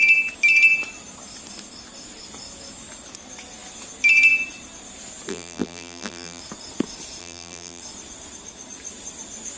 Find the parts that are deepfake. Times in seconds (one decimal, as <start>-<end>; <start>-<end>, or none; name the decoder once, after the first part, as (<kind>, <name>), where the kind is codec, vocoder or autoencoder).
5.3-6.4 (vocoder, BigVGAN v2); 7.2-7.8